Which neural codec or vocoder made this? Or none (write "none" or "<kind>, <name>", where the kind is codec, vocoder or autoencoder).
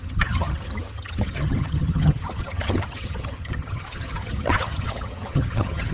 vocoder, HiFi-GAN